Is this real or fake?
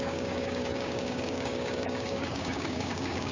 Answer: fake